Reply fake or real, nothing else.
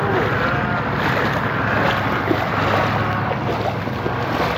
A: real